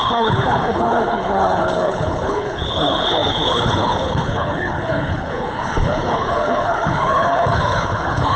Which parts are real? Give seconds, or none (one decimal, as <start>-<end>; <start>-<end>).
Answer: none